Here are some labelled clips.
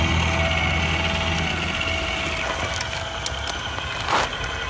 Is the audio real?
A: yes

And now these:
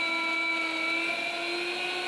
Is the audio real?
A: yes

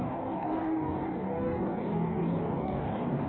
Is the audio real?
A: no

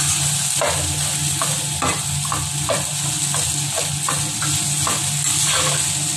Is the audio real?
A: yes